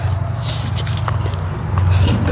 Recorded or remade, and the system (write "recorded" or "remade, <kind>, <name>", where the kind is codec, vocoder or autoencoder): recorded